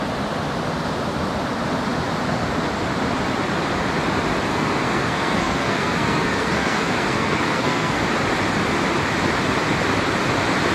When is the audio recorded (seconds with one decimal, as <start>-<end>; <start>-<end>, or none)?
0.0-4.5; 8.0-10.7